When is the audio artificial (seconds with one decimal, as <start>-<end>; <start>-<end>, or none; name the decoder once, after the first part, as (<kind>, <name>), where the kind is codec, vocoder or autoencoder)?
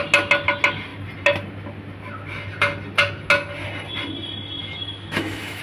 4.6-5.6 (autoencoder, DAC-VAE)